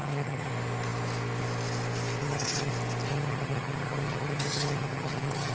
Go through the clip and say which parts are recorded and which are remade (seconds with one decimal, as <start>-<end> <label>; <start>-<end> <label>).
0.0-0.5 remade; 0.5-2.2 recorded; 2.2-2.7 remade; 2.7-3.1 recorded; 3.1-5.5 remade